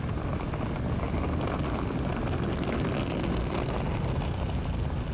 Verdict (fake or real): real